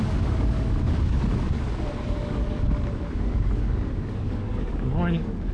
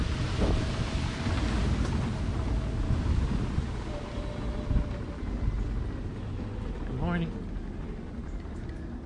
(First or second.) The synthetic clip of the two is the first